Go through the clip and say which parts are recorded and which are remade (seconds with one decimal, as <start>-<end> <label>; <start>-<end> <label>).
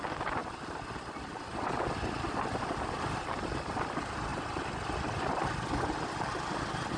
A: 0.0-7.0 recorded